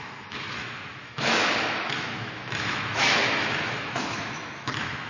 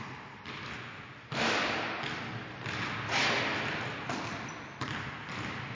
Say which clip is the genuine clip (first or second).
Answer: second